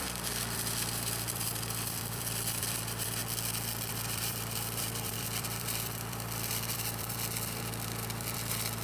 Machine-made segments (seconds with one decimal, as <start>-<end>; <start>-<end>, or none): 0.0-3.2; 3.9-8.8